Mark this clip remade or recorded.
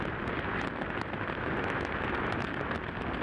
recorded